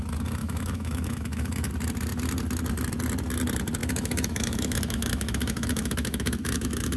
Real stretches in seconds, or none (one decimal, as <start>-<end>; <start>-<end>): 0.0-0.4; 1.7-3.8